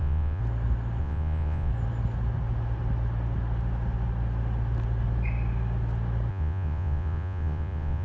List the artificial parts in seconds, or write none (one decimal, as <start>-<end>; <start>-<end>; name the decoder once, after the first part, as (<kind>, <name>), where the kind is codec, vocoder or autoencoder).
0.0-0.4 (vocoder, Vocos); 1.0-1.7; 6.3-8.0